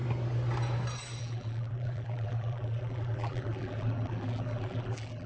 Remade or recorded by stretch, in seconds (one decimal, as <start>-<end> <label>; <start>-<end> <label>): 0.0-1.2 recorded; 1.2-5.3 remade